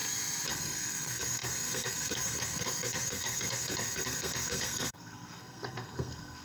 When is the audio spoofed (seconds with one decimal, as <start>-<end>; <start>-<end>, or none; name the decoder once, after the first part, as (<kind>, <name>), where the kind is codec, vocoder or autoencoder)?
0.5-6.4 (codec, SNAC)